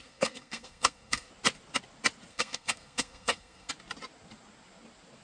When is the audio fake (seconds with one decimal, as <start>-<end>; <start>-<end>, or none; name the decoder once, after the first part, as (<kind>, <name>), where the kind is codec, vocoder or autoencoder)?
0.0-1.3 (codec, SNAC); 2.3-3.7